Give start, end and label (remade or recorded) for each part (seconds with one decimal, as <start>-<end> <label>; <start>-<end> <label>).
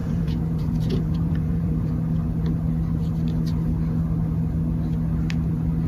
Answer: 0.0-1.9 remade; 1.9-5.9 recorded